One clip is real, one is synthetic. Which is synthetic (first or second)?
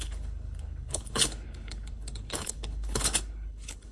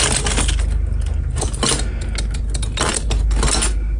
first